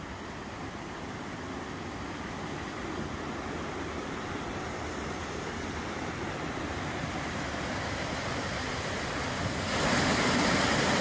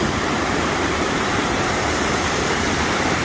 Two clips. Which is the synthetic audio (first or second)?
second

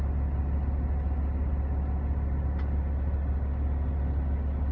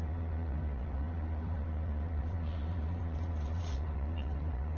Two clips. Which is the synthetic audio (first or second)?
second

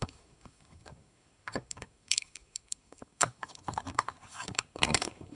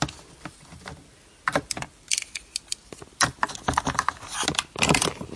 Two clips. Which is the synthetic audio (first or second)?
first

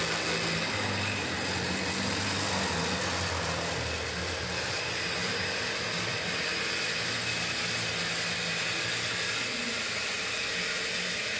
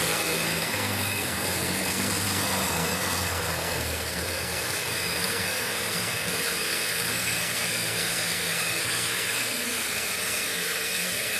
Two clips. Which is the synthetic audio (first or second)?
second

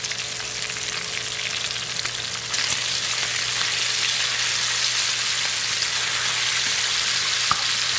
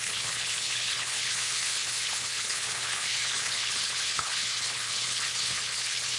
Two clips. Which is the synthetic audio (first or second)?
second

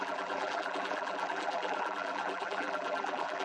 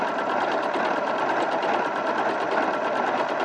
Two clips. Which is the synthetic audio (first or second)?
first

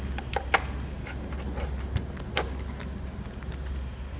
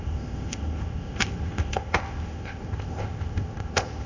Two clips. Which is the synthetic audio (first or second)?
second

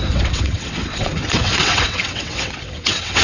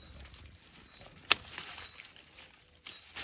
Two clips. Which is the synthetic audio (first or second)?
first